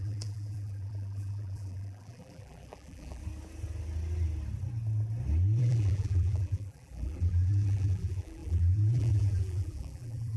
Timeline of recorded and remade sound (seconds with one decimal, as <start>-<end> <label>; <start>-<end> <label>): 0.0-3.2 remade; 3.2-5.6 recorded; 5.6-10.4 remade